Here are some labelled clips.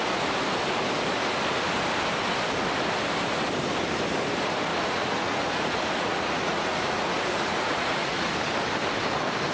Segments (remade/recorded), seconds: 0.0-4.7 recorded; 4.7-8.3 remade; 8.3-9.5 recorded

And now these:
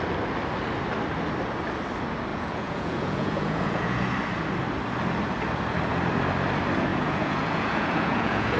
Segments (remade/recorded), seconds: 0.0-2.3 recorded; 2.3-4.1 remade; 4.1-6.9 recorded; 6.9-8.6 remade

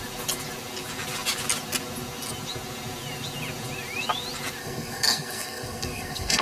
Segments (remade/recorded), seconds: 0.0-4.6 recorded; 4.6-6.4 remade

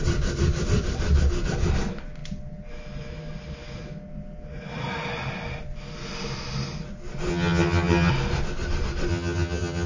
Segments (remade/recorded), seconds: 0.0-7.3 recorded; 7.3-8.1 remade; 8.1-9.1 recorded; 9.1-9.9 remade

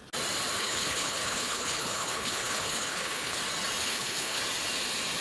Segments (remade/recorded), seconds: 0.0-0.6 recorded; 0.6-3.4 remade; 3.4-3.8 recorded; 3.8-4.4 remade; 4.4-5.2 recorded